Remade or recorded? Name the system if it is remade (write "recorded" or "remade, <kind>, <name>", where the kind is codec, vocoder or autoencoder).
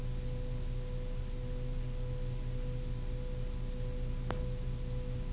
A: recorded